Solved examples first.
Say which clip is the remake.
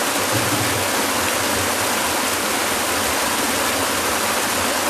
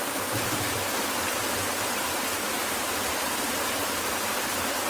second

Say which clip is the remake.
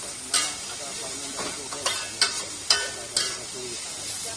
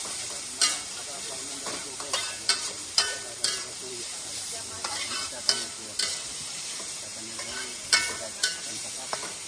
second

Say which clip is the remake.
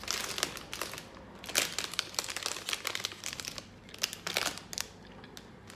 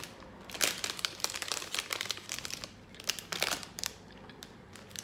second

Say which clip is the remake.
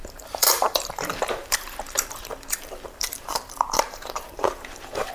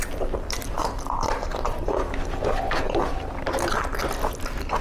first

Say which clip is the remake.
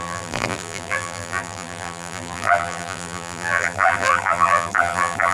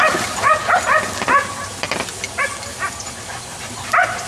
first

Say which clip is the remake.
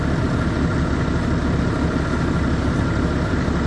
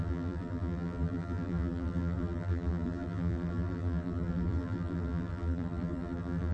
second